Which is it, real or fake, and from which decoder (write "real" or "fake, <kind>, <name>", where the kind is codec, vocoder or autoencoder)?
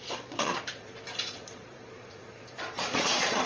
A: fake, vocoder, Vocos